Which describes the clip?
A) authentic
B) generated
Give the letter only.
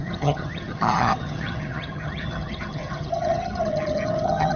B